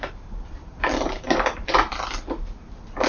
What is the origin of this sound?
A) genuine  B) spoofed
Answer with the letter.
A